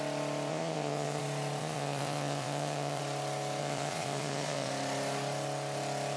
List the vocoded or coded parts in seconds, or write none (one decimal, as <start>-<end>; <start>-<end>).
0.5-1.2; 1.6-3.0; 3.6-4.7